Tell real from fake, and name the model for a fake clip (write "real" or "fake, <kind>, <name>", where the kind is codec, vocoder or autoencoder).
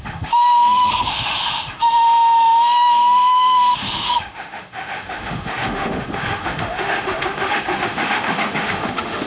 fake, autoencoder, DAC-VAE